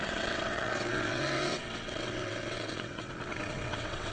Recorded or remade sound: remade